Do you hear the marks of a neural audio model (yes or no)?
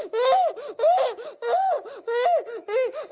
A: yes